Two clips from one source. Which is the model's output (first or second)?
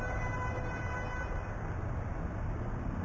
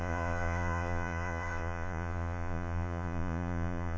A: second